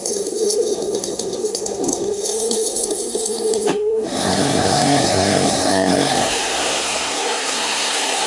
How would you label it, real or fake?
fake